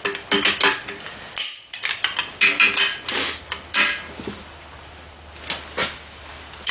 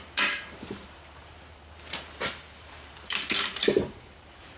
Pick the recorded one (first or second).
first